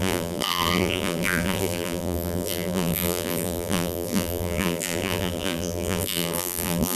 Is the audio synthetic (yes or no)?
yes